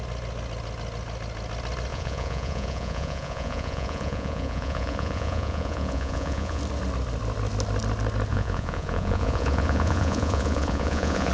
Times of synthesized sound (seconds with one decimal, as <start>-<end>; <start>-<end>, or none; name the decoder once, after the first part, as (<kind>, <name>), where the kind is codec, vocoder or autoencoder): 1.9-6.6 (vocoder, Vocos); 8.3-11.3